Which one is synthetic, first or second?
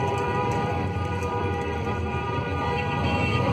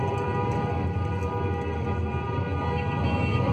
first